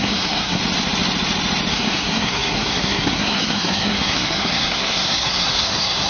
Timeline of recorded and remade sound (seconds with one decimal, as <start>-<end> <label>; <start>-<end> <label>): 0.0-0.6 remade; 0.6-1.7 recorded; 1.7-6.1 remade